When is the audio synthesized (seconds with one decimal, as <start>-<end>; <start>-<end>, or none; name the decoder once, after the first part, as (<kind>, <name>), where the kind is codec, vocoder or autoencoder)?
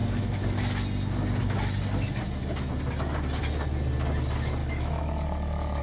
4.6-5.8 (autoencoder, DAC-VAE)